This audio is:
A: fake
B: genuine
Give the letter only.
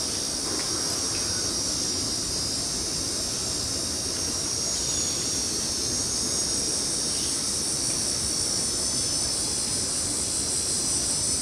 B